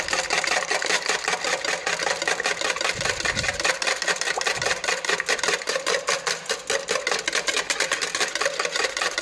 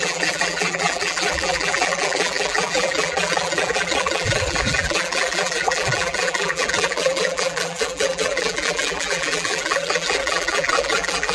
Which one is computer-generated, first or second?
second